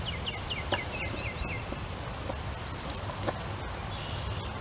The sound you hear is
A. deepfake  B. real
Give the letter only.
B